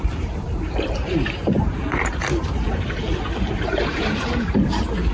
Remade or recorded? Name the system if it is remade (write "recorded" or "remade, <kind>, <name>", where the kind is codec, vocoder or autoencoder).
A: remade, vocoder, BigVGAN v2